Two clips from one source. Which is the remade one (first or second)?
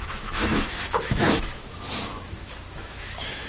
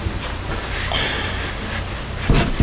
first